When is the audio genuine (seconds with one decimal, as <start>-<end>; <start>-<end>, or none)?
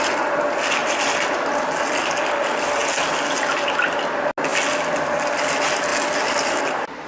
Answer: 0.0-7.1